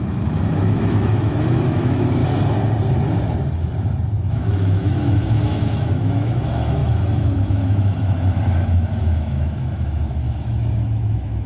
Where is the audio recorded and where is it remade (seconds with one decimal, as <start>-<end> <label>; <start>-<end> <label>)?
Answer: 0.0-2.2 remade; 2.2-4.3 recorded; 4.3-11.5 remade